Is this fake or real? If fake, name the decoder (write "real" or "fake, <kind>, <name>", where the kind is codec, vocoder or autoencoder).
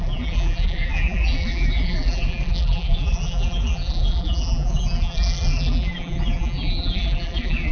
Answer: fake, vocoder, BigVGAN v2